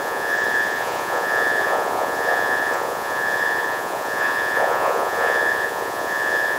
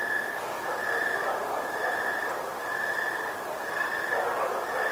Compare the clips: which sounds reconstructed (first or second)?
first